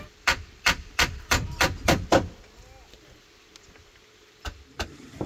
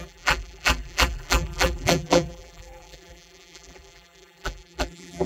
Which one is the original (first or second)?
first